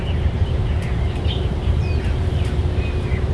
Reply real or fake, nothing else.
fake